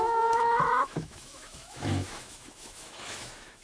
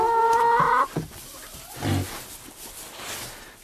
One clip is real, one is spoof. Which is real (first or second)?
second